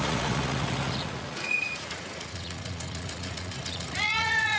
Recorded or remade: remade